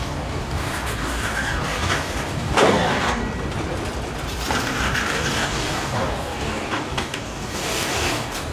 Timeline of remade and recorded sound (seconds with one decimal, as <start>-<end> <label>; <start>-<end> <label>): 0.0-3.2 remade; 3.2-4.6 recorded; 4.6-8.5 remade